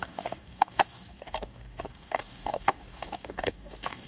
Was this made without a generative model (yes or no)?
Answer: no